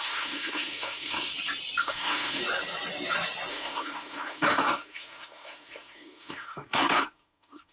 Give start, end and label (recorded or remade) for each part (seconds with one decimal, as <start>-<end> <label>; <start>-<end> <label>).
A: 0.0-1.3 remade; 1.3-1.8 recorded; 1.8-2.4 remade; 2.4-3.5 recorded; 3.5-7.7 remade